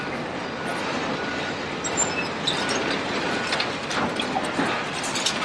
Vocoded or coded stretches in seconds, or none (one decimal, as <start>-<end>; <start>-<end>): none